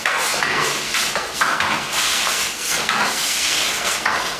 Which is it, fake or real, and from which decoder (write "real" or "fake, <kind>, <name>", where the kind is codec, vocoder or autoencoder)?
fake, codec, SNAC